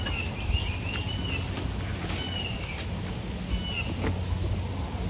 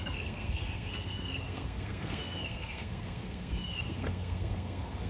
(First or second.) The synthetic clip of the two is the second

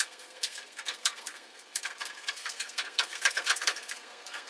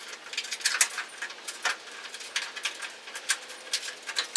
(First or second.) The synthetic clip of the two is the first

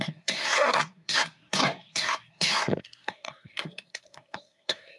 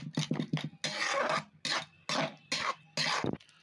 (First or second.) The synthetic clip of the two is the first